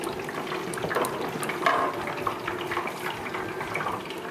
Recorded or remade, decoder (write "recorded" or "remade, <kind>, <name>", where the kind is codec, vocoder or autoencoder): recorded